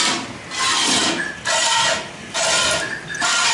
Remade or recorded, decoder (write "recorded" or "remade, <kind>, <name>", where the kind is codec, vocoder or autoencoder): recorded